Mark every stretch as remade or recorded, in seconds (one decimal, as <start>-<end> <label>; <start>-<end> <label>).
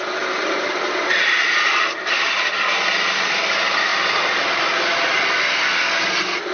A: 0.0-6.5 recorded